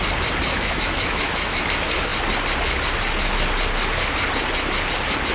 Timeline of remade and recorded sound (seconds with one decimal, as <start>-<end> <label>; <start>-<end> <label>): 0.0-0.5 recorded; 0.5-1.6 remade; 1.6-5.3 recorded